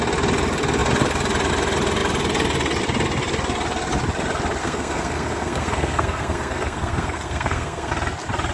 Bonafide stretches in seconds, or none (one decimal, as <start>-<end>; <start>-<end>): 0.0-4.6; 7.9-8.5